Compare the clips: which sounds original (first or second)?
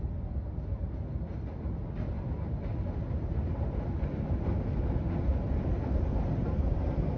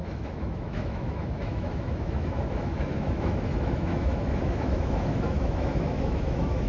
first